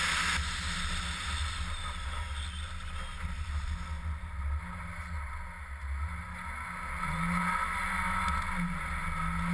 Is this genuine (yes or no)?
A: yes